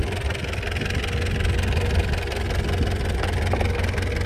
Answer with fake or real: real